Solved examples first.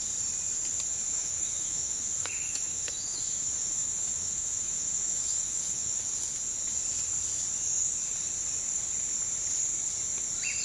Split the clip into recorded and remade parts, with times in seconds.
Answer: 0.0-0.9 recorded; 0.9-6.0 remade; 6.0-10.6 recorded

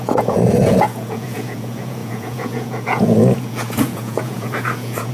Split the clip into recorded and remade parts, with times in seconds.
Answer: 0.0-5.1 remade

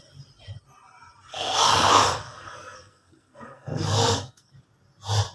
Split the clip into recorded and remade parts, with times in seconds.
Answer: 0.0-1.3 recorded; 1.3-4.5 remade; 4.5-5.3 recorded